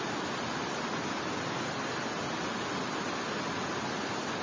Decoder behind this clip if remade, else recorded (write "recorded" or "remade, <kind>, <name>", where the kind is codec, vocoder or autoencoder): recorded